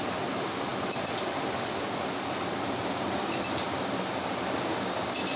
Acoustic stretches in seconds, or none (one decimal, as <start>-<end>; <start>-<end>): 0.0-5.4